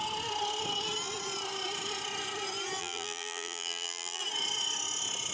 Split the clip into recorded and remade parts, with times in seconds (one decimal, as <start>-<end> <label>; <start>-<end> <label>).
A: 0.0-2.8 recorded; 2.8-4.2 remade; 4.2-5.3 recorded